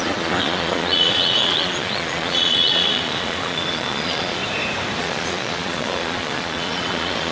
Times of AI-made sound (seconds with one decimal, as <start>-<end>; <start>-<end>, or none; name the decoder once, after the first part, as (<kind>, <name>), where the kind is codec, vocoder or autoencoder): 0.0-4.4 (vocoder, Vocos); 5.0-7.3